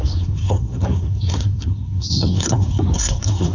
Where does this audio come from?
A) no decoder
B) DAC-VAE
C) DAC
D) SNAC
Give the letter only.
D